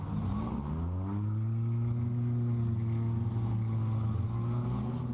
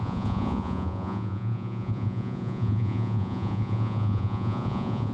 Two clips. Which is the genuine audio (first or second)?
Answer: first